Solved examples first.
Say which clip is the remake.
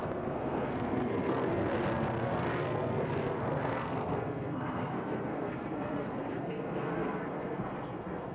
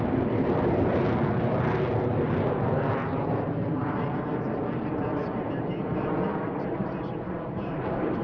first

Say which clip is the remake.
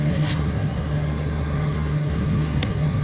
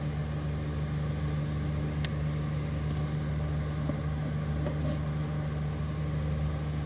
first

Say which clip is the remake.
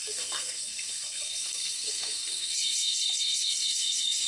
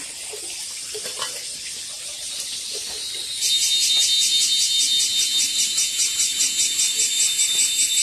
first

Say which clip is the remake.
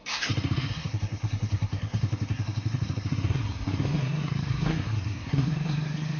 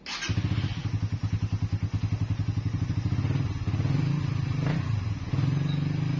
first